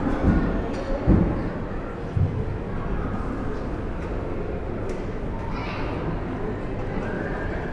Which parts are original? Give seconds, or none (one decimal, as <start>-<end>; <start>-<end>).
0.0-7.7

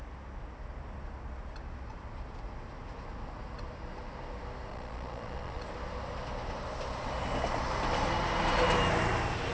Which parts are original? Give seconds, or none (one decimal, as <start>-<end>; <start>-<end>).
0.0-4.7; 5.6-9.5

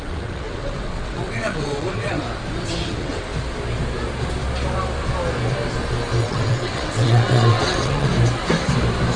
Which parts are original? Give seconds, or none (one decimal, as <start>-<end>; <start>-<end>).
2.2-2.8; 3.3-6.2; 8.1-9.2

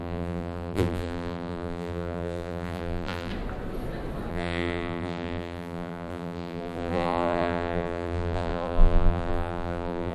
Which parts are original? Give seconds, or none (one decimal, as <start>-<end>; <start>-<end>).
3.3-4.3